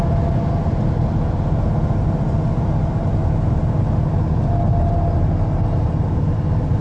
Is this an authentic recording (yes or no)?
yes